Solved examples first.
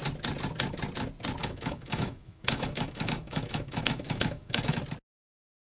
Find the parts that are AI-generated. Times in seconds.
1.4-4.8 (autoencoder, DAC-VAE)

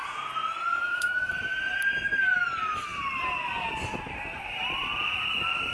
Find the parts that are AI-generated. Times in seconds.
0.7-1.3 (autoencoder, DAC-VAE)

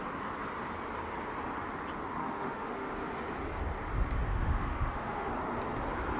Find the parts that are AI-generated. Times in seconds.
2.2-2.9 (autoencoder, DAC-VAE); 4.3-5.3

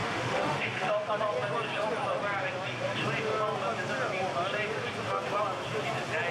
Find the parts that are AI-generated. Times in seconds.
0.0-0.9 (autoencoder, DAC-VAE)